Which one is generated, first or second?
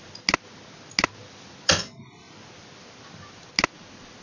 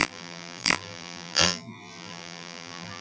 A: second